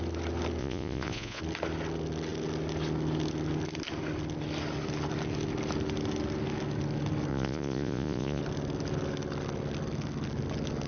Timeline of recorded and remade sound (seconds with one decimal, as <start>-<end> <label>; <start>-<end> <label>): 0.0-0.6 recorded; 0.6-1.4 remade; 1.4-7.3 recorded; 7.3-8.4 remade; 8.4-10.9 recorded